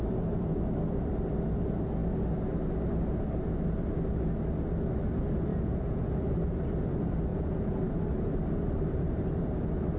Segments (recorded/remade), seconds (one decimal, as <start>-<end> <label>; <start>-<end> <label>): 0.0-5.5 recorded; 5.5-6.1 remade; 6.1-7.3 recorded; 7.3-7.8 remade; 7.8-10.0 recorded